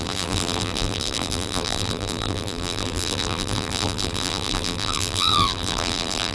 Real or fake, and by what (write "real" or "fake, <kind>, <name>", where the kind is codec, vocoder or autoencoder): fake, vocoder, BigVGAN v2